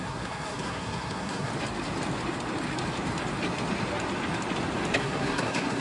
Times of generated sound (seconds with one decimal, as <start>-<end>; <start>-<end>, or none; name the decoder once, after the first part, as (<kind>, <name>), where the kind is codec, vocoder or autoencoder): 0.0-1.5 (codec, SNAC); 5.0-5.8